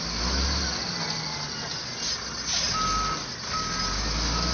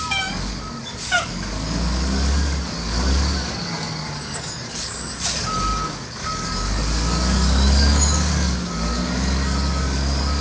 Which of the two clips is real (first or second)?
first